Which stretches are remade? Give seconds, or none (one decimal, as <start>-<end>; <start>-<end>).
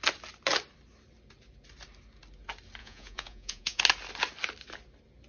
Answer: 2.8-3.8